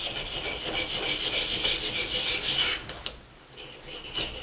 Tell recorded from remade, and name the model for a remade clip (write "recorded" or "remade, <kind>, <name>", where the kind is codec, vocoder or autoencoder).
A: recorded